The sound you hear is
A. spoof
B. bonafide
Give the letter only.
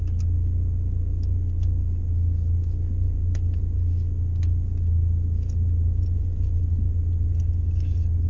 B